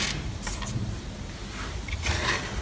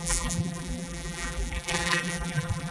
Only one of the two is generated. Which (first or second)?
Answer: second